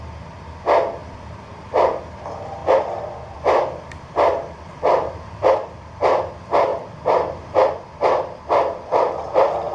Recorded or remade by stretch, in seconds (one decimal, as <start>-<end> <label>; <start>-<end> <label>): 0.0-1.0 recorded; 1.0-1.9 remade; 1.9-2.6 recorded; 2.6-6.3 remade; 6.3-6.7 recorded; 6.7-9.7 remade

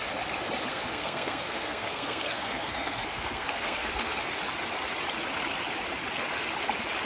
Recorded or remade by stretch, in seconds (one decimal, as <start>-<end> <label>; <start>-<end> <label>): 0.0-0.7 recorded; 0.7-4.2 remade; 4.2-7.1 recorded

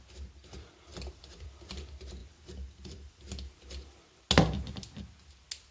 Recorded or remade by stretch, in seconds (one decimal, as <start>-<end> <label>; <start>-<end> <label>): 0.0-0.9 recorded; 0.9-1.7 remade; 1.7-2.2 recorded; 2.2-3.2 remade; 3.2-5.7 recorded

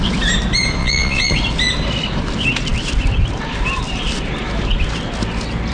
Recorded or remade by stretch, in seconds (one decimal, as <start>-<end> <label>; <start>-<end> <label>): 0.0-0.8 recorded; 0.8-1.3 remade; 1.3-5.7 recorded

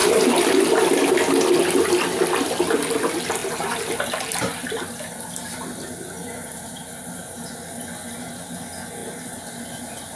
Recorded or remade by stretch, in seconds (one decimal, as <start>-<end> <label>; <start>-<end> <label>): 0.0-3.4 recorded; 3.4-4.5 remade; 4.5-6.2 recorded; 6.2-7.5 remade; 7.5-10.2 recorded

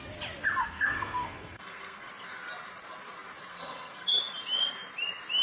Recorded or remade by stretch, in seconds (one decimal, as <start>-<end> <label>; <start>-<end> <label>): 0.0-0.6 recorded; 0.6-2.1 remade; 2.1-3.5 recorded; 3.5-4.2 remade; 4.2-5.4 recorded